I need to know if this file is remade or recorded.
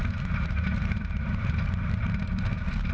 remade